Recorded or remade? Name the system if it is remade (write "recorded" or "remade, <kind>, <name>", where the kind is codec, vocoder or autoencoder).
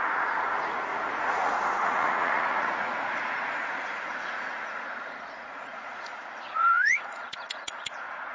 remade, vocoder, Vocos